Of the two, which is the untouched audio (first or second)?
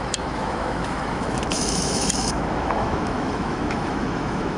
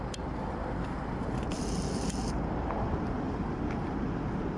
second